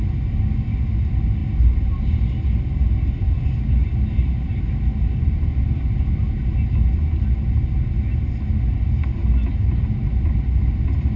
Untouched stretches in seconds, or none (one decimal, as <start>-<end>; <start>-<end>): 0.0-11.2